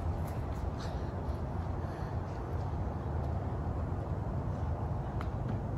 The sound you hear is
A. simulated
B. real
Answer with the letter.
B